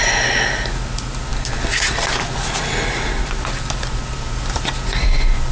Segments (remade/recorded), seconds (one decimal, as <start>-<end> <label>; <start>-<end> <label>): 0.0-5.5 recorded